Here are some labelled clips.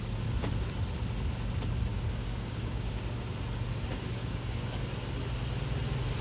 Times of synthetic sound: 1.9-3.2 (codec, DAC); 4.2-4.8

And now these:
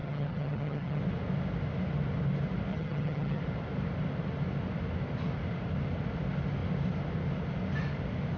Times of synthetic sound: 0.0-1.0 (vocoder, HiFi-GAN); 2.7-3.4

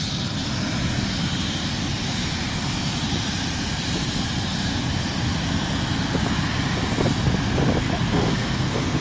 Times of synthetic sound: 8.1-9.0 (codec, SNAC)

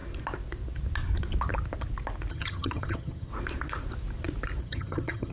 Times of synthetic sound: 2.3-3.3 (vocoder, HiFi-GAN); 4.6-5.3

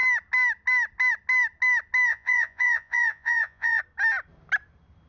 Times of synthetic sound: 2.1-3.8 (vocoder, Vocos)

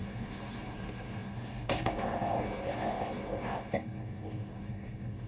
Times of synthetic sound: 0.0-5.3 (codec, SNAC)

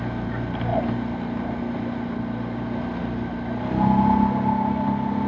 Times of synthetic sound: none